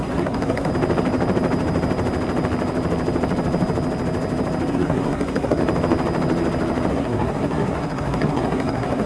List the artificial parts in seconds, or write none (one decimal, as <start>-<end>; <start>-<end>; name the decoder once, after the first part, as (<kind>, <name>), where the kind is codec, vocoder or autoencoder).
0.0-0.7 (codec, SNAC); 4.7-5.6; 6.9-9.1